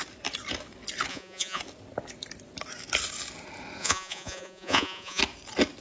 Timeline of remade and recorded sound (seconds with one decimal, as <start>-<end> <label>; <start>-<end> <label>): 0.0-1.1 recorded; 1.1-1.6 remade; 1.6-3.8 recorded; 3.8-5.2 remade; 5.2-5.8 recorded